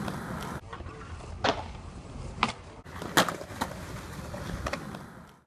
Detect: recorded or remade recorded